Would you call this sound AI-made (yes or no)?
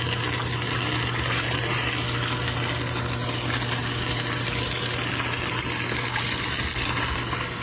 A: no